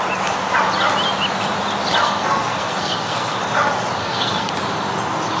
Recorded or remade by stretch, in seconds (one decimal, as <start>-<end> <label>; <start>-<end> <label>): 0.0-2.0 recorded; 2.0-3.4 remade; 3.4-4.0 recorded; 4.0-4.5 remade; 4.5-5.4 recorded